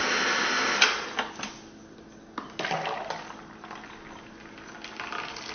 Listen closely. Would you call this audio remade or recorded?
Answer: recorded